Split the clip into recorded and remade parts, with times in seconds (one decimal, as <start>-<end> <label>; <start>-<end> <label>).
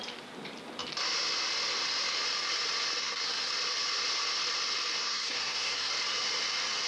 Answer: 0.0-3.0 recorded; 3.0-3.5 remade; 3.5-5.0 recorded; 5.0-5.9 remade; 5.9-6.9 recorded